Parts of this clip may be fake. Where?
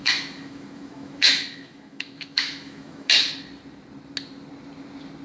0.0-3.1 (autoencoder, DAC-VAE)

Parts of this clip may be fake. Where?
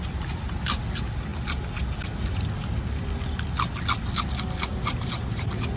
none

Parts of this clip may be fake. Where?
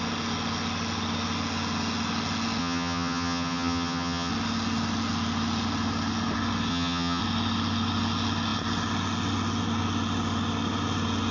2.6-4.3 (vocoder, HiFi-GAN); 6.7-7.2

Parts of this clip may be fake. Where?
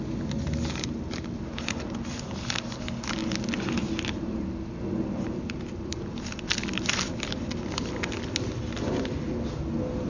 none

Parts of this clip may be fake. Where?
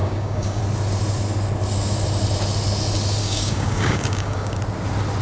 0.0-0.6 (codec, DAC); 3.2-4.6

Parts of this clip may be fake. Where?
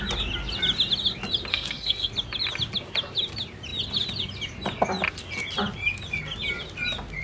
1.5-2.1 (codec, SNAC)